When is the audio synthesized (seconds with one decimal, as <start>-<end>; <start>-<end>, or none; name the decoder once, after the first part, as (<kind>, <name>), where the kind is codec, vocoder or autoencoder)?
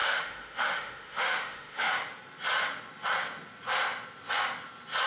0.0-1.9 (autoencoder, DAC-VAE)